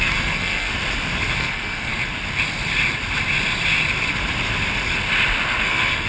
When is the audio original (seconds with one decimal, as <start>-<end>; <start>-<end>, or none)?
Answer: 0.7-1.4; 1.9-5.6